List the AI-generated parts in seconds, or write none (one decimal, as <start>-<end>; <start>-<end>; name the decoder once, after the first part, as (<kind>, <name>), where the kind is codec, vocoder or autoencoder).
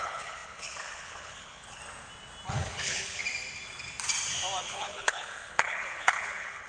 0.0-1.8 (codec, HILCodec); 2.5-3.2; 4.6-6.7